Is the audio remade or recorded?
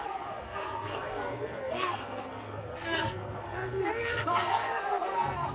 remade